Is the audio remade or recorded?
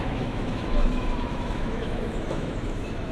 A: remade